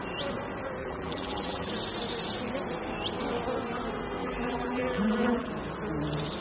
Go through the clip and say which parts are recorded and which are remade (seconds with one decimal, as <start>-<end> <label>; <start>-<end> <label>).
0.0-0.8 recorded; 0.8-1.7 remade; 1.7-4.2 recorded; 4.2-5.5 remade; 5.5-6.4 recorded